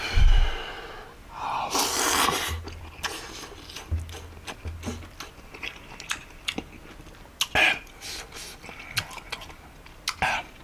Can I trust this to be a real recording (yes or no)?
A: yes